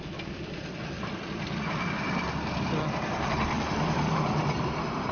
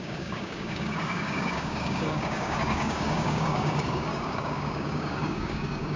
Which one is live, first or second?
first